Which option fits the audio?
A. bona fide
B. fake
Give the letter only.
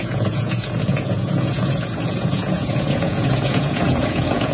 B